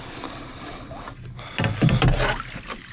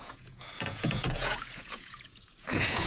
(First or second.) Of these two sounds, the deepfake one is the second